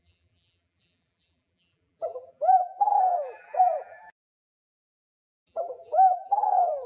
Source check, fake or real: fake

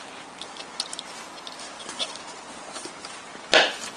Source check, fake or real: real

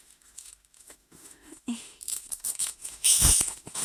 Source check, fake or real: fake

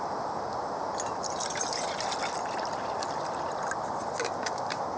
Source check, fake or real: real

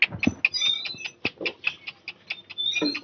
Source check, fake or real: real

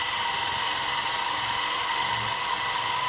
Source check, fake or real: real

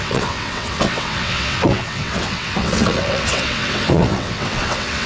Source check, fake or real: fake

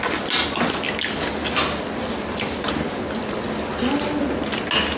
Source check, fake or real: real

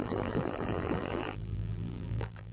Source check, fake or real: fake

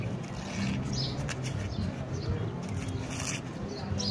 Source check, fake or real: real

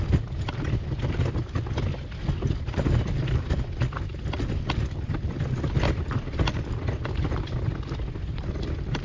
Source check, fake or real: real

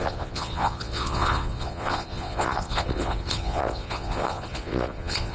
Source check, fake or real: fake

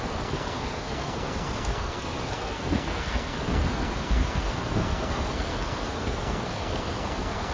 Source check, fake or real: fake